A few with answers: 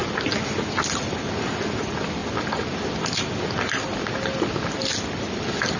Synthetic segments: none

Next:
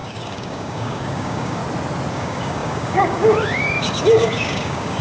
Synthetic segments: 0.0-1.6; 2.1-5.0

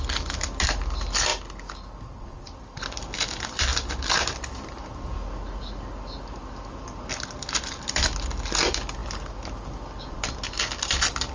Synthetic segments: none

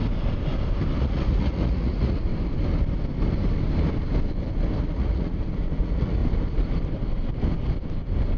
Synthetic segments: 1.0-2.3; 4.8-6.2

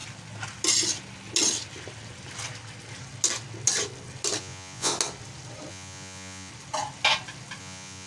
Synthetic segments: 4.4-4.9; 5.7-6.5; 7.6-8.1

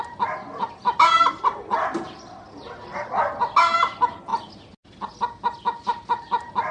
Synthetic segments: none

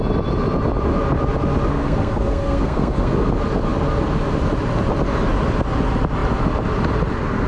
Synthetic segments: 1.7-3.3